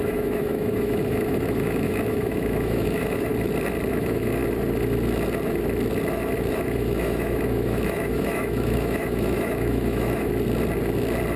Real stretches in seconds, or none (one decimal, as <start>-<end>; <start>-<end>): 3.3-3.9; 4.4-6.5; 10.3-11.4